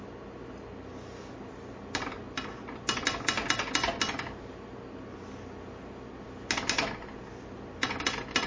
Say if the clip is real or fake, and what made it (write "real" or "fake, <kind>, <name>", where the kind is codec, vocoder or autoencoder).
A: real